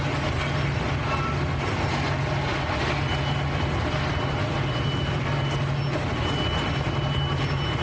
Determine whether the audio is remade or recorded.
recorded